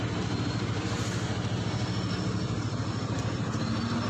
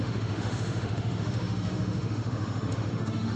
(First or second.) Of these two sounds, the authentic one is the first